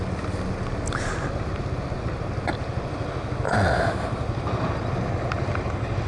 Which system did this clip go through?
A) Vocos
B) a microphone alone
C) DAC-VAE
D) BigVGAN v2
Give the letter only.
B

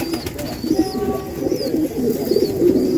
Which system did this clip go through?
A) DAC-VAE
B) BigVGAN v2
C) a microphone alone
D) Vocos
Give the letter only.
C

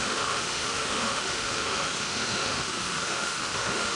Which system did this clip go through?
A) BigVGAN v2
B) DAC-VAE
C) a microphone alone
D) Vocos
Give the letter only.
B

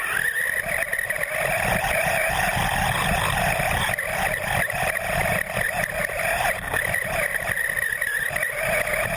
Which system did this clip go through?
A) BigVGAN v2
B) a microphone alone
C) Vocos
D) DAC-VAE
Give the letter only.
B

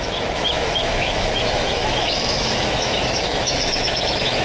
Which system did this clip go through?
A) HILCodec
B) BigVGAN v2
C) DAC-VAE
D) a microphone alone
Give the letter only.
C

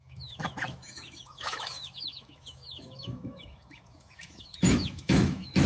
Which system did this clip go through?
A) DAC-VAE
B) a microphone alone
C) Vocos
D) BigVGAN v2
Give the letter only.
A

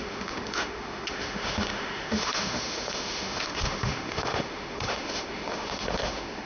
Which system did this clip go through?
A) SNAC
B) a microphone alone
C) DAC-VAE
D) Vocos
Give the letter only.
C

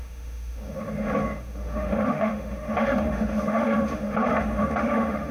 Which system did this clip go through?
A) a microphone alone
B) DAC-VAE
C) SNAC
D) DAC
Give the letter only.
B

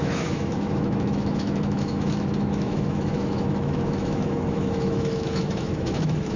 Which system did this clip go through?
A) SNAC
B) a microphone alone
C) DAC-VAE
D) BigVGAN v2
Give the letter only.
C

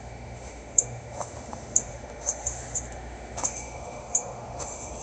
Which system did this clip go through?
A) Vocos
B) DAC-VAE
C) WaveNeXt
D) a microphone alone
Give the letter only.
B